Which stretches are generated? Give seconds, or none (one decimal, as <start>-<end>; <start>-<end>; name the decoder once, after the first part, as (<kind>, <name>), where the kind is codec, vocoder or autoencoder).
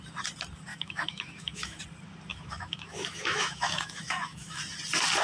0.7-1.8 (autoencoder, DAC-VAE); 2.3-4.6